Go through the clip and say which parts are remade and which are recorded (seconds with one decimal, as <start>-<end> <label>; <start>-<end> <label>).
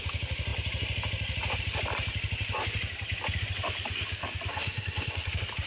0.0-4.5 recorded; 4.5-5.3 remade; 5.3-5.7 recorded